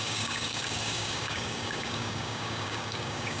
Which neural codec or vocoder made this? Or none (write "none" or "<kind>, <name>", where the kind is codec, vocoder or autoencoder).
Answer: codec, DAC